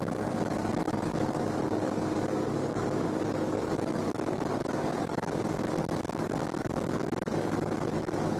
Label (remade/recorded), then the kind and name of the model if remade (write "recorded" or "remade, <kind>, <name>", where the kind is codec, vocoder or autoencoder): remade, codec, DAC